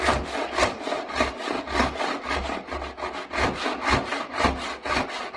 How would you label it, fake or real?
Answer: real